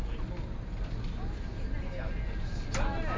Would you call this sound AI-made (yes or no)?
no